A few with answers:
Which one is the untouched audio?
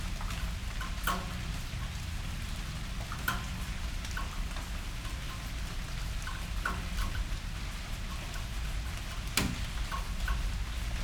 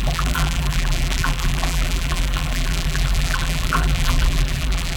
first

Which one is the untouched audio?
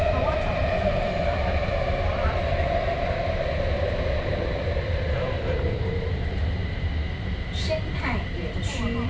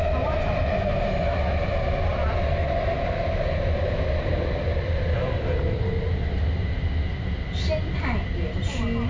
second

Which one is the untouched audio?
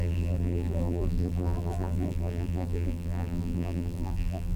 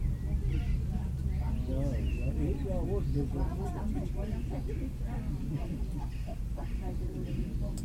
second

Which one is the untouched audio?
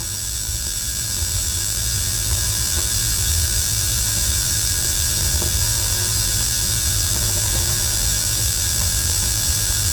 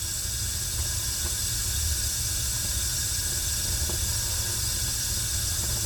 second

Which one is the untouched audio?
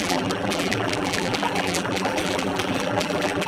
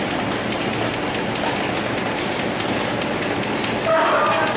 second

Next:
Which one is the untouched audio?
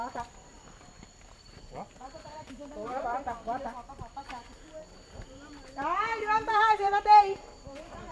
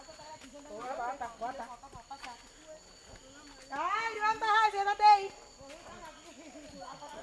second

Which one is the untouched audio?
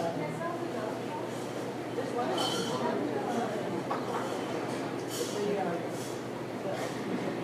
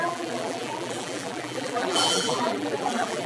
first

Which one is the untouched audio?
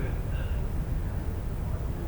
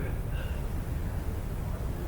first